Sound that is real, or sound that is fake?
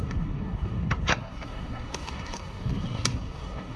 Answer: fake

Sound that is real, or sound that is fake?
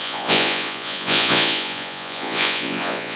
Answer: fake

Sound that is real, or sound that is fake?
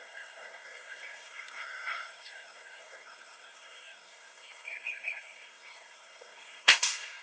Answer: fake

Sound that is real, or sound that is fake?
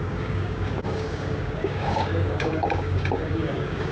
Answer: fake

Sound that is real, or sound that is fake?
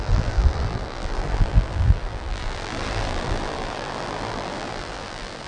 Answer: fake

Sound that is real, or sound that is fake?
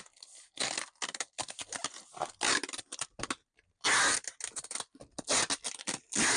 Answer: real